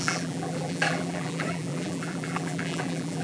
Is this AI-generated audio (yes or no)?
yes